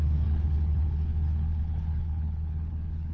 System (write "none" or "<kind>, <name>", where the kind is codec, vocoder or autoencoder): codec, HILCodec